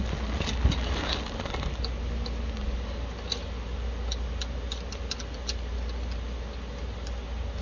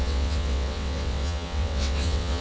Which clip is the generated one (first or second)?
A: second